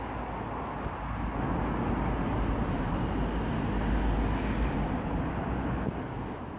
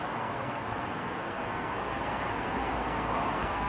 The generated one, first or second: second